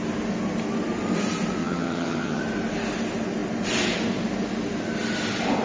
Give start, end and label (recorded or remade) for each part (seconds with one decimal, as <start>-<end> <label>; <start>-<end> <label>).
0.0-1.6 recorded; 1.6-2.4 remade; 2.4-5.6 recorded